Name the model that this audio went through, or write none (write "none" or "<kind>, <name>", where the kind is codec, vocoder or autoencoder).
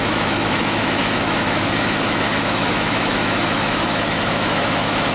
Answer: autoencoder, DAC-VAE